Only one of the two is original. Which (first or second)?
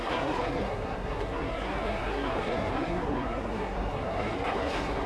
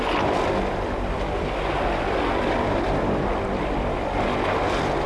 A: second